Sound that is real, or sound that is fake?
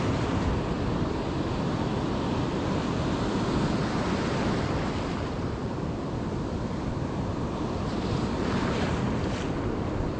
real